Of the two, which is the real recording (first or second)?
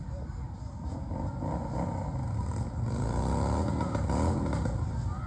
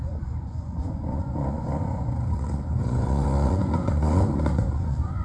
first